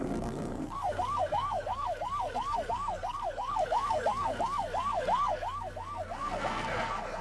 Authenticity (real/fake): fake